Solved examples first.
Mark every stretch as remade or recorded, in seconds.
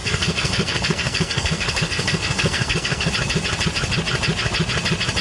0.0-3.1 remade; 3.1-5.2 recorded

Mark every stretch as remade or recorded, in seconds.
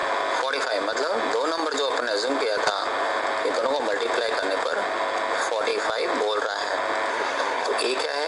0.0-7.1 recorded; 7.1-7.7 remade; 7.7-8.3 recorded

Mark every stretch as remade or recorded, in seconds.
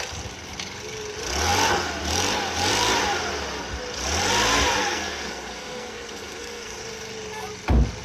0.0-4.8 recorded; 4.8-6.8 remade; 6.8-8.0 recorded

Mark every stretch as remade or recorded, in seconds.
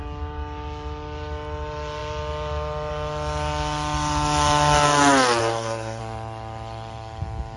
0.0-5.4 recorded; 5.4-6.0 remade; 6.0-7.6 recorded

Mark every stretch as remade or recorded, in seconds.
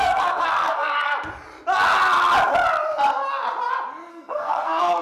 0.0-1.1 remade; 1.1-4.1 recorded; 4.1-5.0 remade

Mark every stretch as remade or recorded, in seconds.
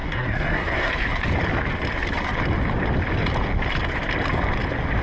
0.0-0.9 remade; 0.9-5.0 recorded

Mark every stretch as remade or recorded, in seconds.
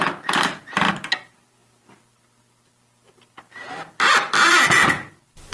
0.0-5.5 recorded